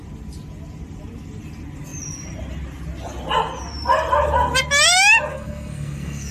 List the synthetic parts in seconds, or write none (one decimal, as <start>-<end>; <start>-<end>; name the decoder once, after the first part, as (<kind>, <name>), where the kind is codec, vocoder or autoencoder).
5.3-6.3 (codec, SNAC)